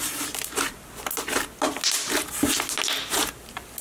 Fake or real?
real